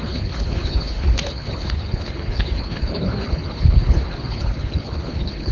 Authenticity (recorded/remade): remade